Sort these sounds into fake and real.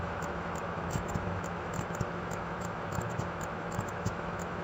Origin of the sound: fake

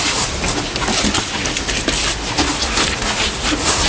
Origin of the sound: real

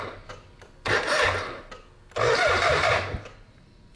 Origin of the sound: real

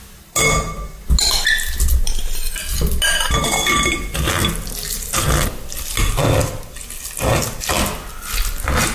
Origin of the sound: real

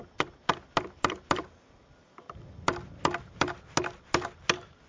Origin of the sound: real